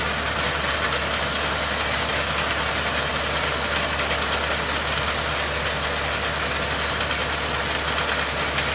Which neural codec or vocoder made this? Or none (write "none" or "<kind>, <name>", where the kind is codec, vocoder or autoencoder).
none